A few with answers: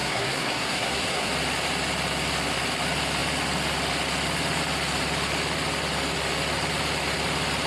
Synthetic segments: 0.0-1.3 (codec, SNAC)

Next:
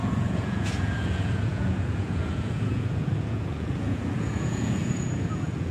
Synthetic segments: 0.0-5.7 (vocoder, Vocos)

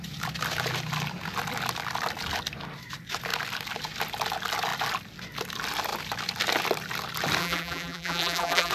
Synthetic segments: 7.4-8.7 (vocoder, BigVGAN v2)

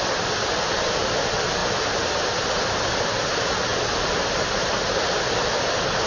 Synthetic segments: none

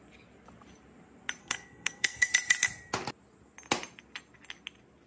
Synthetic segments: 1.4-2.3 (codec, SNAC)

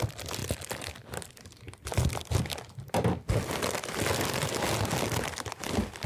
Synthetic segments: 0.0-1.9 (vocoder, BigVGAN v2); 5.6-6.1